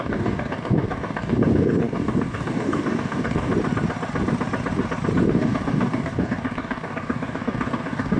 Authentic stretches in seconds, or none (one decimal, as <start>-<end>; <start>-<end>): 3.5-5.2